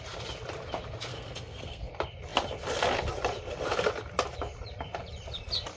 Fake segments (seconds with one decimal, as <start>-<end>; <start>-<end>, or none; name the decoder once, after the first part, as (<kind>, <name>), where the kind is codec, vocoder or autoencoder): 1.1-1.9 (codec, SNAC)